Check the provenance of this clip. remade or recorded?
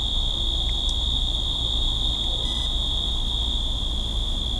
recorded